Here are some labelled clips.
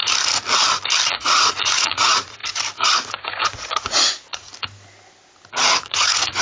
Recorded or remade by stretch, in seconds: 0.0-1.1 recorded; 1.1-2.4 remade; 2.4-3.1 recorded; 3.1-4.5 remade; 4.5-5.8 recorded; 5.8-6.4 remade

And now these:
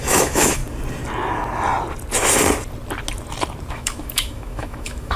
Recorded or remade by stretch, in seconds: 0.0-0.6 remade; 0.6-3.7 recorded; 3.7-5.2 remade